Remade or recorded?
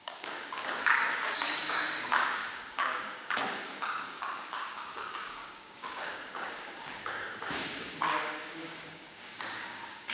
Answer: remade